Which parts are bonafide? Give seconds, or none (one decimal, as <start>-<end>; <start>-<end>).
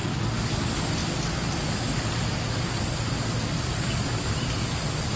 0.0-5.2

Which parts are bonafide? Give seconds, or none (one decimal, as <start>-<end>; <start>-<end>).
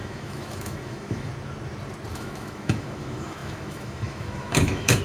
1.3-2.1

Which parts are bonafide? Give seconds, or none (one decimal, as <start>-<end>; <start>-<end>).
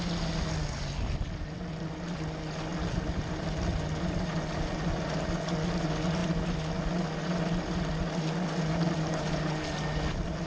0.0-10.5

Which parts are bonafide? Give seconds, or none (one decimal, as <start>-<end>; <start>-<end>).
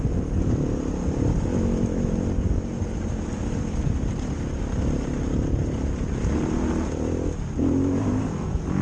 0.0-1.5; 2.1-8.8